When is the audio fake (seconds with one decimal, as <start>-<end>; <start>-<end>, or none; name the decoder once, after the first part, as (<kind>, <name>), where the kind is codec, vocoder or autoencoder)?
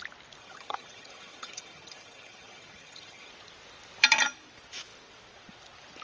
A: 0.4-3.3 (vocoder, HiFi-GAN)